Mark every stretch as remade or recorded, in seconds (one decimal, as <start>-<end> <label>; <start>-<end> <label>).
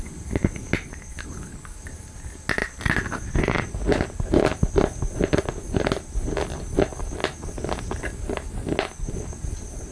0.0-9.9 recorded